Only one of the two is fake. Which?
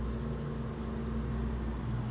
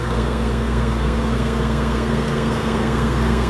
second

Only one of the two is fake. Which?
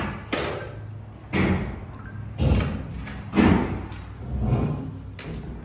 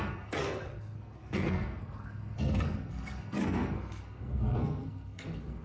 second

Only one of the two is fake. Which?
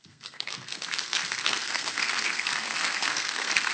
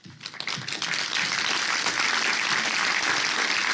first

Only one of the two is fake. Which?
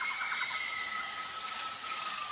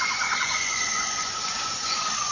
second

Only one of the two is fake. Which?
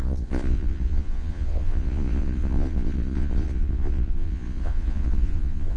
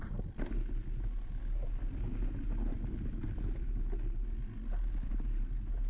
first